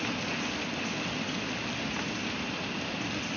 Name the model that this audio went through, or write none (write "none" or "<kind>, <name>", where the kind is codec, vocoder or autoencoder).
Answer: none